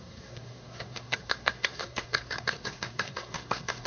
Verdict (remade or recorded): remade